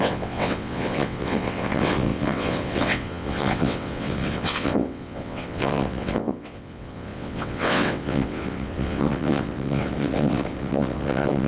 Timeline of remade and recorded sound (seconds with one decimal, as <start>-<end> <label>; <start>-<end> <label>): 0.0-11.5 remade